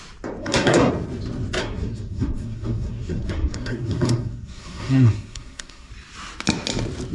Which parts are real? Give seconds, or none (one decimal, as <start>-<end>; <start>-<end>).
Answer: 0.0-0.4; 0.9-1.6; 5.9-7.1